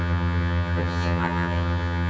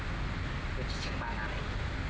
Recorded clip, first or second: second